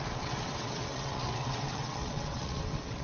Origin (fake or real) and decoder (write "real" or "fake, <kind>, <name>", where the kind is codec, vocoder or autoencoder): fake, vocoder, WaveNeXt